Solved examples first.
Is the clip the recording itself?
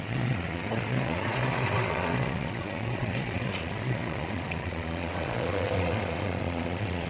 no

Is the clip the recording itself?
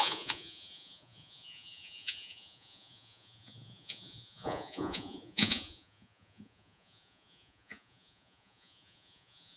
no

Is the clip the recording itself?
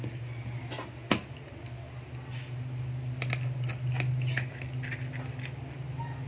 yes